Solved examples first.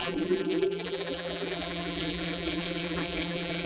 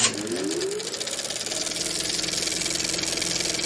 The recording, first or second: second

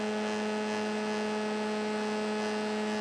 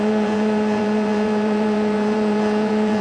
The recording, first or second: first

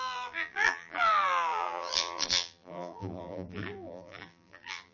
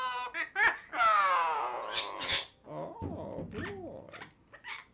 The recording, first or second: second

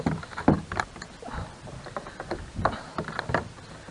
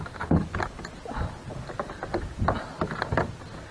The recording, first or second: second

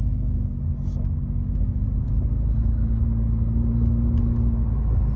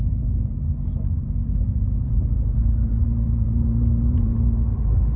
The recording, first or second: first